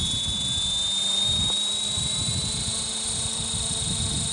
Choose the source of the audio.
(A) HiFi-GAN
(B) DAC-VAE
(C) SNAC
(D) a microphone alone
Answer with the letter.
D